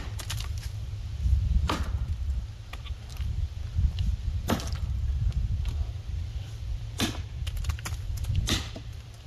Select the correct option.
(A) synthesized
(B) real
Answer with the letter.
A